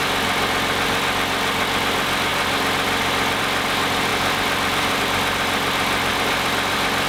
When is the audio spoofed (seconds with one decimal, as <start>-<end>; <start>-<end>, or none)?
4.1-5.0; 6.1-7.1